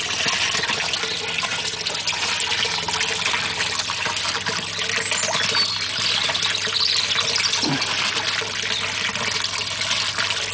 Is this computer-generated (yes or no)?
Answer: no